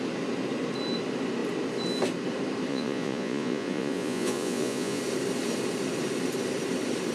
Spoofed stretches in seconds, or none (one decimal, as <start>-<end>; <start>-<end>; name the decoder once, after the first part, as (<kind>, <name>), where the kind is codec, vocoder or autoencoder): 2.7-5.0 (vocoder, Vocos)